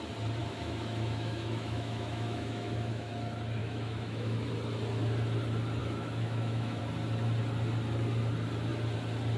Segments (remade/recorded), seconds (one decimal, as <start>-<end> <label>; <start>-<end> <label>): 0.0-0.4 recorded; 0.4-3.1 remade; 3.1-3.6 recorded; 3.6-4.5 remade; 4.5-5.8 recorded; 5.8-6.8 remade; 6.8-9.4 recorded